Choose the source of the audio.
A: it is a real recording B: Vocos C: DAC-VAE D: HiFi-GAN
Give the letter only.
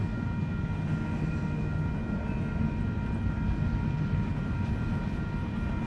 A